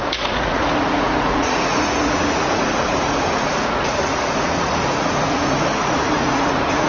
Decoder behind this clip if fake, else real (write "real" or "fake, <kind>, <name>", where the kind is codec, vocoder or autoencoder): fake, vocoder, Vocos